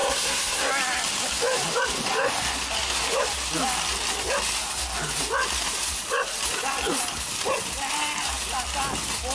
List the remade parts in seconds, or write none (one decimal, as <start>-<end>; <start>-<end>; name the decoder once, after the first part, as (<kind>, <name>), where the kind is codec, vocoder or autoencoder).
0.0-0.7 (codec, SNAC)